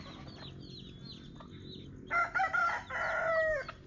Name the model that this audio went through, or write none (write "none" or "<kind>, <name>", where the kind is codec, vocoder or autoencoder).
none